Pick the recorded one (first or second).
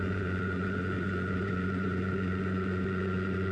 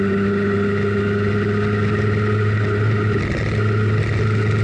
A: second